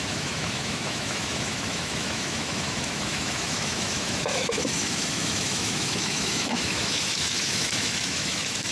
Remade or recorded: remade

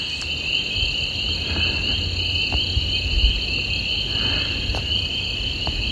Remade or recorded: recorded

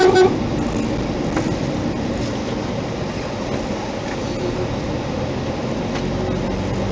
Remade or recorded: recorded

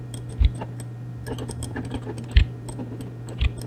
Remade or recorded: recorded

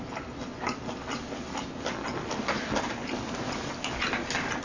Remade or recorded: recorded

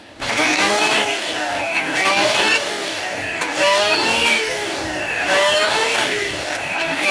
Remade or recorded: remade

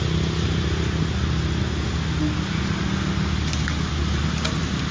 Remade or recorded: recorded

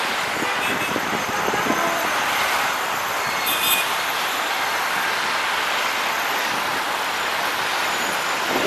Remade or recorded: recorded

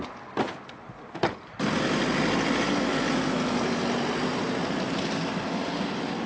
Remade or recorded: recorded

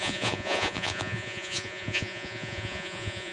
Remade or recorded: remade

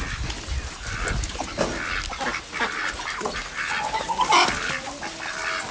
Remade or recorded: recorded